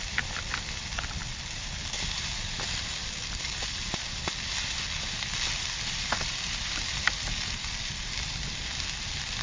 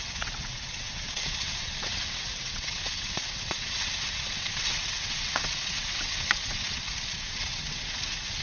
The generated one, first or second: second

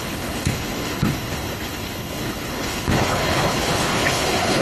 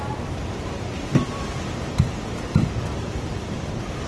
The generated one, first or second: first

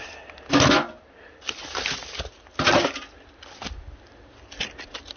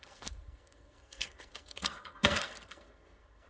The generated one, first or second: second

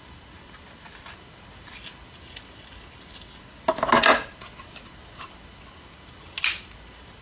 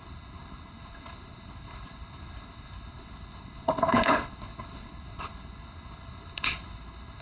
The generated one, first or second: second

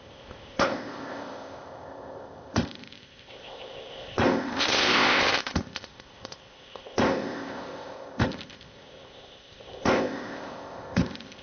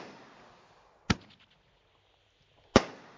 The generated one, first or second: first